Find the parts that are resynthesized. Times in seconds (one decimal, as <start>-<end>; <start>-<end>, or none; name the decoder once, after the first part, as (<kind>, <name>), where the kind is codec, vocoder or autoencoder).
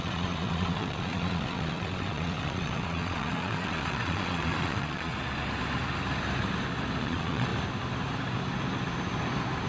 0.0-5.1 (vocoder, Vocos); 7.0-7.5